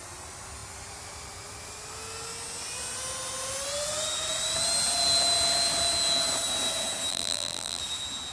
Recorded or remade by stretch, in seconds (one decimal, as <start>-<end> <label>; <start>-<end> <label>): 0.0-7.1 recorded; 7.1-7.8 remade; 7.8-8.3 recorded